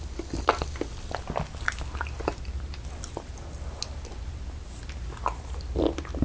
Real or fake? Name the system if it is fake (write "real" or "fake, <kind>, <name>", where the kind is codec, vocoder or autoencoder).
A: real